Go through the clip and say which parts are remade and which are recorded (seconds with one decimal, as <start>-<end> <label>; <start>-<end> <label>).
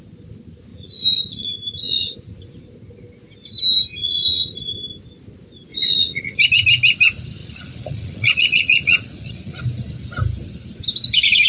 0.0-0.7 recorded; 0.7-2.7 remade; 2.7-4.0 recorded; 4.0-4.7 remade; 4.7-5.7 recorded; 5.7-6.4 remade; 6.4-7.4 recorded; 7.4-9.6 remade; 9.6-11.5 recorded